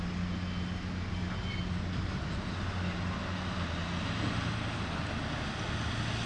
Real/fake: real